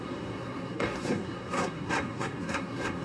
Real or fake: fake